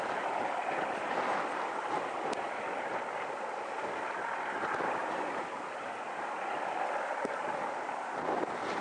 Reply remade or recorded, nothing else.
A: recorded